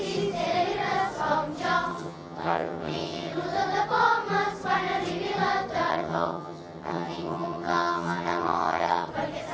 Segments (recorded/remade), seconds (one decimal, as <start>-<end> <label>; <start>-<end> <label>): 0.0-1.9 recorded; 1.9-3.3 remade; 3.3-5.9 recorded; 5.9-9.1 remade; 9.1-9.5 recorded